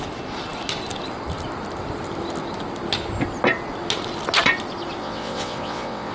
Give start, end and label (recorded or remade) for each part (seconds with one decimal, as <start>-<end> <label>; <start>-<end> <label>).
0.0-5.0 recorded; 5.0-6.1 remade